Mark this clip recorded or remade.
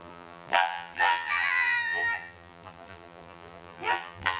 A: remade